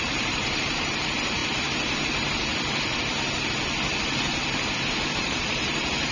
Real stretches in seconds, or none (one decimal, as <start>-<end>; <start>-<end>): 1.4-5.1